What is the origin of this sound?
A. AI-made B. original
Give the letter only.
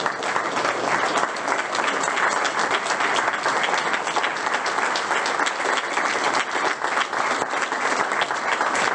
B